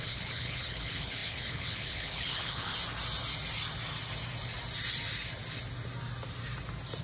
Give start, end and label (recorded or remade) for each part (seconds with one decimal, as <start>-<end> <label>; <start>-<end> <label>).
0.0-2.7 remade; 2.7-7.0 recorded